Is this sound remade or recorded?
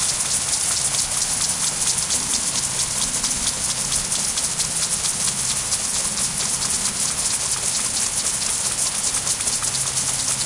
recorded